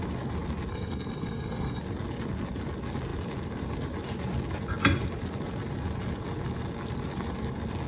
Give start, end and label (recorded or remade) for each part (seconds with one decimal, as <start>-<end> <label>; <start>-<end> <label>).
0.0-0.7 recorded; 0.7-1.8 remade; 1.8-7.9 recorded